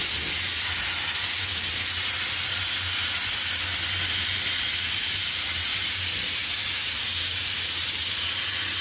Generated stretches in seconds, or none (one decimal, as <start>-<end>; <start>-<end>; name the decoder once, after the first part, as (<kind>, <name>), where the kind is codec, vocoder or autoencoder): 0.0-0.5 (vocoder, BigVGAN v2); 5.1-8.8